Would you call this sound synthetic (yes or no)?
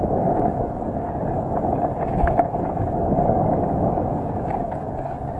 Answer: yes